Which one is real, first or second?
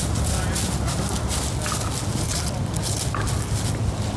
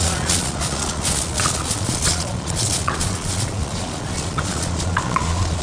first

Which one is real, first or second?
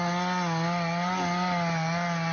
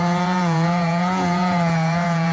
first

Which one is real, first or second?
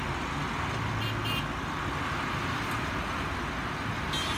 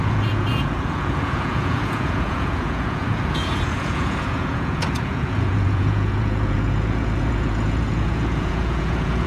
first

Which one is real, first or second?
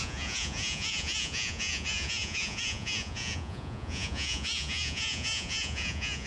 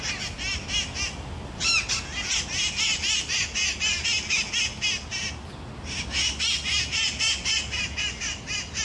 second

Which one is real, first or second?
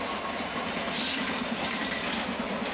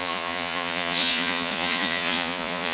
first